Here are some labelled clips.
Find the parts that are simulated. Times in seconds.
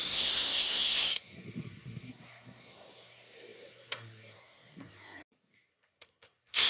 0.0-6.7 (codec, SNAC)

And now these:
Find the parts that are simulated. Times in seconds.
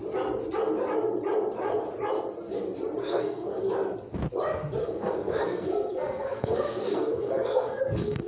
3.0-3.6 (codec, SNAC); 4.8-8.3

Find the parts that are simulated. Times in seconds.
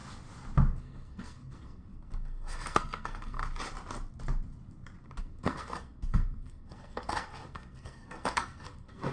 0.8-3.4 (codec, SNAC); 5.2-9.1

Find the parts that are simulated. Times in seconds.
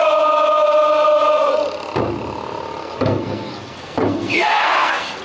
2.8-5.2 (codec, SNAC)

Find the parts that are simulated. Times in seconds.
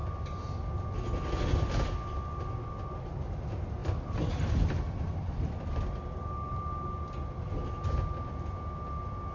none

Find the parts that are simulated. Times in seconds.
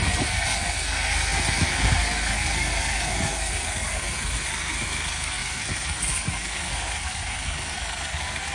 0.0-8.5 (codec, SNAC)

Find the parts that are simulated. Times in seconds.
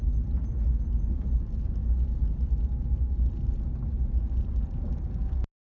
none